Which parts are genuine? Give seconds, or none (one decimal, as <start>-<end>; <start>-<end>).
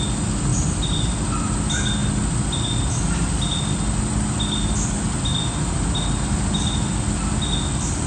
0.0-8.1